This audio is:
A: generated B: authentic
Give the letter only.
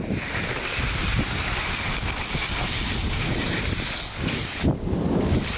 B